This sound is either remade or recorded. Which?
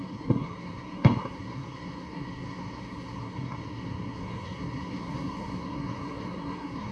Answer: remade